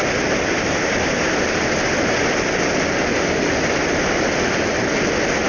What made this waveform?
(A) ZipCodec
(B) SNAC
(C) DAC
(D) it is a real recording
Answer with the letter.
D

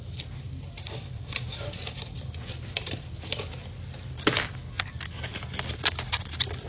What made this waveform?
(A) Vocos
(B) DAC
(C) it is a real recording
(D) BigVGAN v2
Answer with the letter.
C